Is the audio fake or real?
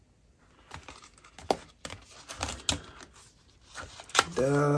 real